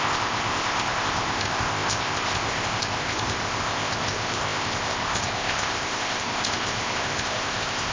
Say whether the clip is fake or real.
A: fake